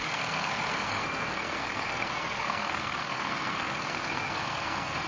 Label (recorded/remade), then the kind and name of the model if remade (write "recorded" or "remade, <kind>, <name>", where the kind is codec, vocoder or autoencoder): remade, codec, SNAC